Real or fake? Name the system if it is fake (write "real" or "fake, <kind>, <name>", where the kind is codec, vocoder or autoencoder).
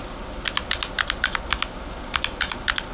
real